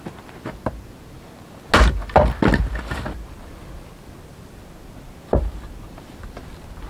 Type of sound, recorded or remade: recorded